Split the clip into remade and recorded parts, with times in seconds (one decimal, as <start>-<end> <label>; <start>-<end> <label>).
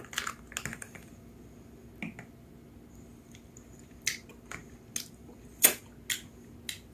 0.0-6.9 recorded